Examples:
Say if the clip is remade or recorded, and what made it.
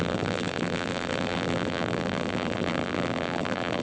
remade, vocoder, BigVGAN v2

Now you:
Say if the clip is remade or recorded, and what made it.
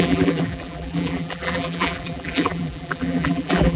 remade, vocoder, BigVGAN v2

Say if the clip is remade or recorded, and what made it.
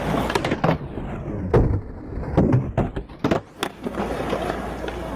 recorded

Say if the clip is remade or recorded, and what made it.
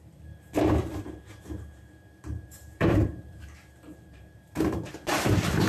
remade, vocoder, BigVGAN v2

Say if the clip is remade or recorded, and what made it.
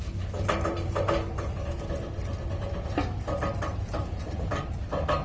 remade, vocoder, BigVGAN v2